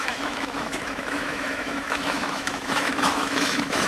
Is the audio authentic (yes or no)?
no